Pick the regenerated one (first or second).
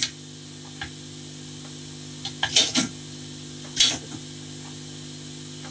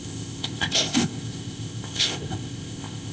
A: second